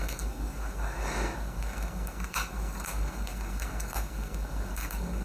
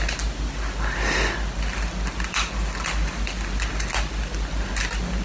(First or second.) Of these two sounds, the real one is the second